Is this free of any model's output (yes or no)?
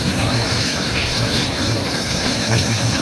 no